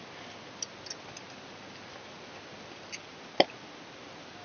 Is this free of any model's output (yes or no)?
yes